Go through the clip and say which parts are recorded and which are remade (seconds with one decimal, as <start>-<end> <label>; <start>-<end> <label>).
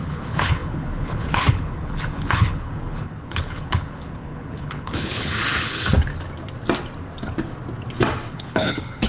0.0-6.1 remade; 6.1-8.3 recorded; 8.3-9.1 remade